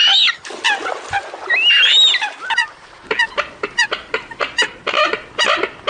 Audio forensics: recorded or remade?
recorded